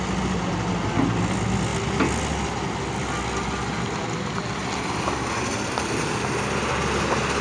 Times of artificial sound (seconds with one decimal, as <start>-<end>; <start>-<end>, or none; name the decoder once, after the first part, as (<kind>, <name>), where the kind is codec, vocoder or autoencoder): none